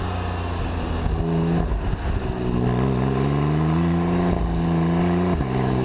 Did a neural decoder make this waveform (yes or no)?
no